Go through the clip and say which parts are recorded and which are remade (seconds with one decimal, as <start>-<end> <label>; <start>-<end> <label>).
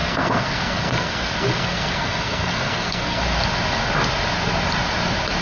0.0-3.2 remade; 3.2-5.4 recorded